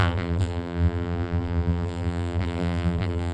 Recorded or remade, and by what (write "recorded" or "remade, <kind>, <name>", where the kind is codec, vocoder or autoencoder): remade, vocoder, BigVGAN v2